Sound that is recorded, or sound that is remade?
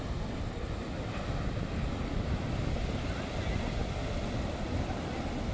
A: recorded